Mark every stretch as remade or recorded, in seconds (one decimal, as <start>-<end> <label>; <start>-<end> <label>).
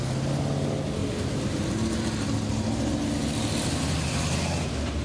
0.0-5.0 recorded